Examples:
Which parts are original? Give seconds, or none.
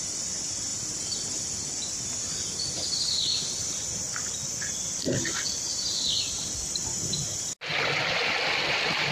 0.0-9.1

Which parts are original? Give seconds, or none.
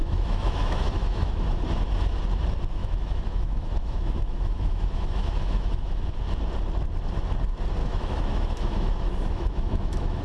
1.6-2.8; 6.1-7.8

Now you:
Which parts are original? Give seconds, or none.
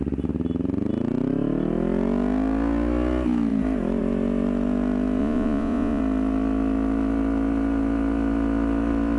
0.0-5.2; 6.0-9.2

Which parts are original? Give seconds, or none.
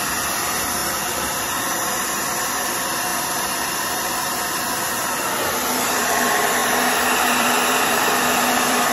6.6-7.2